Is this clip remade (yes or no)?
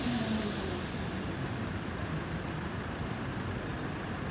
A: no